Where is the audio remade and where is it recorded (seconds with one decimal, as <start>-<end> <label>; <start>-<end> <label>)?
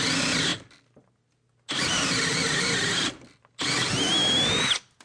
0.0-5.0 recorded